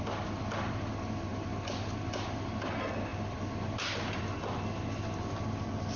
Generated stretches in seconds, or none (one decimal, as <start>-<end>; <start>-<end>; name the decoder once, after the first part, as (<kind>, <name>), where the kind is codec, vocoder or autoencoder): none